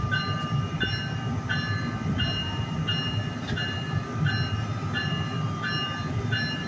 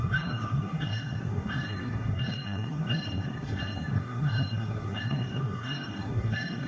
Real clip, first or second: first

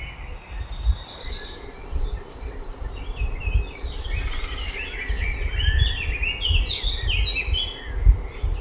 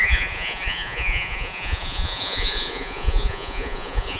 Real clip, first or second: first